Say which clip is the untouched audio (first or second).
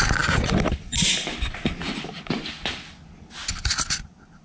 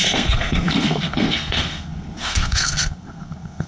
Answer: first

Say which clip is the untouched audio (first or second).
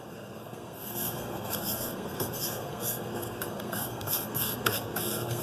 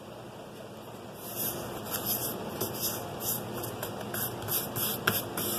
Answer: second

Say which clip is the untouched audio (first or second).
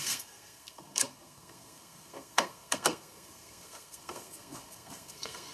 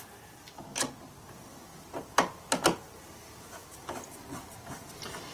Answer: second